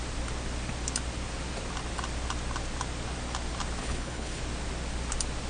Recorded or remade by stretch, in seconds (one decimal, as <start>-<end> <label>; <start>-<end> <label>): 0.0-3.8 recorded; 3.8-4.4 remade; 4.4-5.5 recorded